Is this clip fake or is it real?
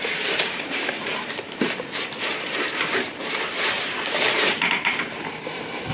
fake